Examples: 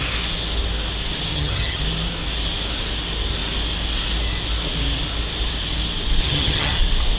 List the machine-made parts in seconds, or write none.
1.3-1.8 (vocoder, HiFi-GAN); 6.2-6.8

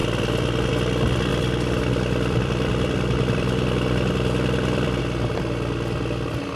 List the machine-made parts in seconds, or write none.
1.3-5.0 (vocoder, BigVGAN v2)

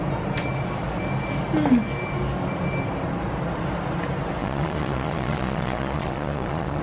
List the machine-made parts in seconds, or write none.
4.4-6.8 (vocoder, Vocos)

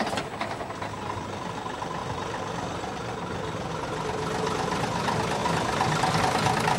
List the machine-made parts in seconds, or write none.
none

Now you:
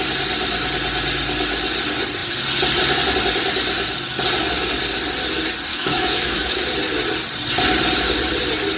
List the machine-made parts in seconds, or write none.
5.7-6.6 (autoencoder, DAC-VAE)

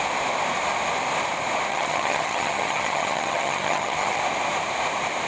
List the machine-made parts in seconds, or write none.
1.7-4.2 (vocoder, HiFi-GAN)

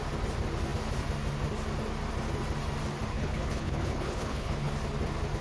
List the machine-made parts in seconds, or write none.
3.1-4.7 (codec, HILCodec)